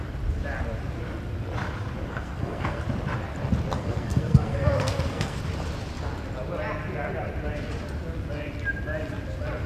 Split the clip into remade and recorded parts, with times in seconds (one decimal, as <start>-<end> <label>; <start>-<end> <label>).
0.0-2.1 recorded; 2.1-2.8 remade; 2.8-3.8 recorded; 3.8-5.4 remade; 5.4-9.7 recorded

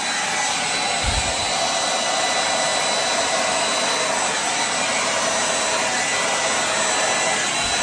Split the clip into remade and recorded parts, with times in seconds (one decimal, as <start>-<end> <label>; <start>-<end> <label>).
0.0-7.8 recorded